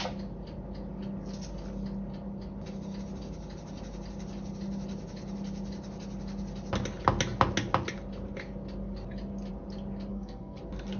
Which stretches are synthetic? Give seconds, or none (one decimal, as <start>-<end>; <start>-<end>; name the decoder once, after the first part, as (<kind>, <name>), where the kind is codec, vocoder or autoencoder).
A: 10.1-10.6 (codec, SNAC)